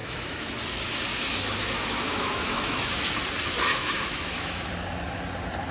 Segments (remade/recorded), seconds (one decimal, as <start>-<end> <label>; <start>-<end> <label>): 0.0-0.5 remade; 0.5-1.1 recorded; 1.1-2.9 remade; 2.9-3.7 recorded; 3.7-4.7 remade; 4.7-5.7 recorded